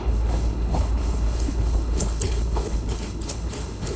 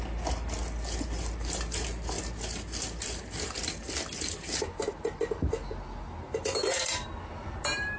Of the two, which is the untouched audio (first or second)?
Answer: second